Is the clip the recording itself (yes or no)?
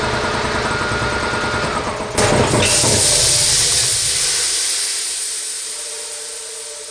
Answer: yes